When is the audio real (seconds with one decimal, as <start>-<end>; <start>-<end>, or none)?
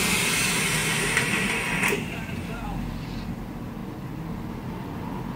0.0-0.8; 3.0-5.4